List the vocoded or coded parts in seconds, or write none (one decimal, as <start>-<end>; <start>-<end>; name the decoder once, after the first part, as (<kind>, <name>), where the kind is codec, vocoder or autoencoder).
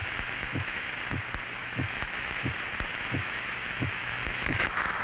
0.0-0.9 (autoencoder, DAC-VAE); 1.6-2.5; 2.9-5.0